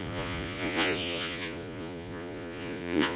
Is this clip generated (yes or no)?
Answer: yes